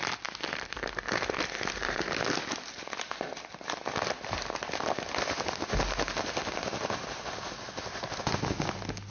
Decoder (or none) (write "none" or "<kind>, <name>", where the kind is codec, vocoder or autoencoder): none